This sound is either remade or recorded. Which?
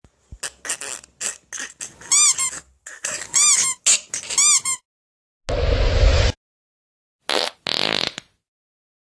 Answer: recorded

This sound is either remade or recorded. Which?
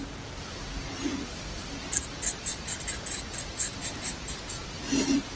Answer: recorded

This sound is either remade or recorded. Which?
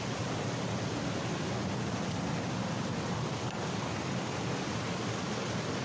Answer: recorded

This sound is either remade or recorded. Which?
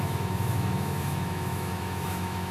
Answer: remade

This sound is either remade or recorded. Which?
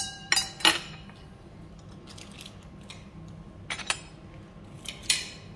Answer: recorded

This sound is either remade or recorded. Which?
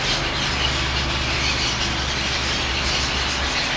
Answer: recorded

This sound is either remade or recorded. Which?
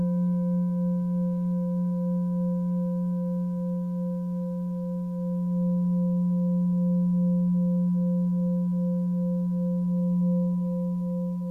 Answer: recorded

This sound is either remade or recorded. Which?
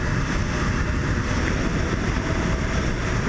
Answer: recorded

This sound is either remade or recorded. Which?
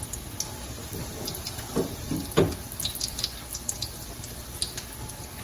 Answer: recorded